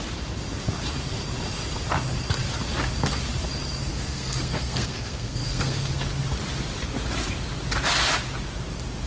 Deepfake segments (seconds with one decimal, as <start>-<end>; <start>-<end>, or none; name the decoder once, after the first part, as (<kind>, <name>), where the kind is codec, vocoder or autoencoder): 3.9-6.0 (codec, SNAC)